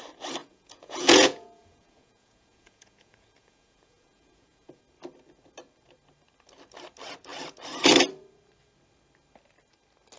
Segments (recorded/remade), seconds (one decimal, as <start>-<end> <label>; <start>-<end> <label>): 0.0-0.4 recorded; 0.4-4.8 remade; 4.8-10.2 recorded